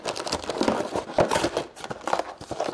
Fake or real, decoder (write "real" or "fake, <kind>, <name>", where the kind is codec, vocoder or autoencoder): real